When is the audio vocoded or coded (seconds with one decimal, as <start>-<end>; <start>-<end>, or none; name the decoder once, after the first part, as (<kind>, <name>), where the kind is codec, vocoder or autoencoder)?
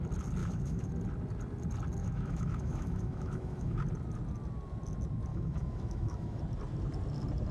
0.4-0.9 (autoencoder, DAC-VAE); 2.0-3.8; 5.3-6.4